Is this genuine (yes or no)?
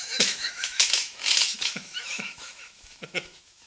no